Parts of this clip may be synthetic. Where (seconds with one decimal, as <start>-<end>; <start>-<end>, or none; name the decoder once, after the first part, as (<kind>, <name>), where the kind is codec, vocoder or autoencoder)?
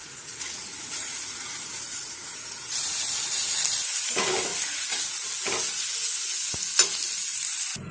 0.0-2.4 (vocoder, Vocos)